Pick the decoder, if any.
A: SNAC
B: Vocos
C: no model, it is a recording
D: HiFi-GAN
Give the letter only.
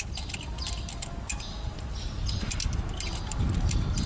C